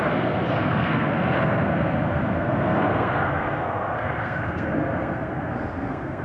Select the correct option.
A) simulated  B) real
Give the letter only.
A